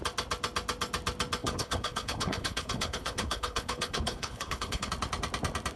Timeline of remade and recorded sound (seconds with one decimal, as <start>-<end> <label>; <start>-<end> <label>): 0.0-1.4 recorded; 1.4-4.9 remade; 4.9-5.8 recorded

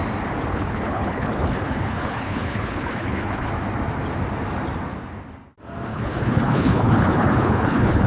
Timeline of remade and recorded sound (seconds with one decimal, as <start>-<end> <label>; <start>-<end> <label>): 0.0-0.5 recorded; 0.5-3.5 remade; 3.5-5.9 recorded; 5.9-8.1 remade

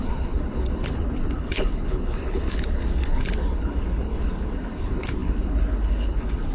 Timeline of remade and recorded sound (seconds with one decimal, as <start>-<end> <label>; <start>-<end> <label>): 0.0-6.5 remade

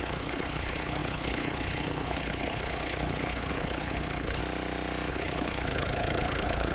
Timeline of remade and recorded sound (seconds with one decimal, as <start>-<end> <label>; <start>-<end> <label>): 0.0-4.4 remade; 4.4-5.1 recorded; 5.1-6.7 remade

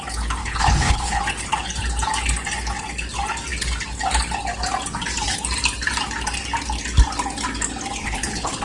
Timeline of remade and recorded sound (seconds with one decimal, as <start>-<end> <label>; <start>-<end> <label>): 0.0-0.4 recorded; 0.4-1.2 remade; 1.2-8.0 recorded; 8.0-8.6 remade

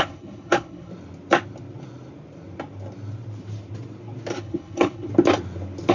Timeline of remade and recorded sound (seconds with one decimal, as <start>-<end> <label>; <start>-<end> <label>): 0.0-0.9 remade; 0.9-4.4 recorded; 4.4-5.1 remade; 5.1-5.9 recorded